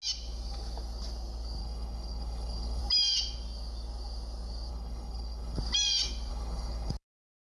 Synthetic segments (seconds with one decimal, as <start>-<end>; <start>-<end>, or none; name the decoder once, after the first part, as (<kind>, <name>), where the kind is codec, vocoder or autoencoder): 1.6-2.8 (codec, HILCodec); 4.7-5.6; 6.3-6.9